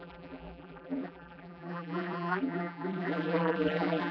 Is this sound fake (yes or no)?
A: yes